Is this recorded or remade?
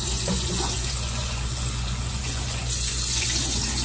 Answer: remade